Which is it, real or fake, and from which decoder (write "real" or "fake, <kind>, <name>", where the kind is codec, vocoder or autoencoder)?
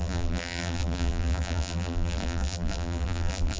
fake, vocoder, BigVGAN v2